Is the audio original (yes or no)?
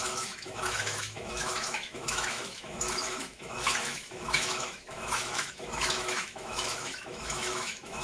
no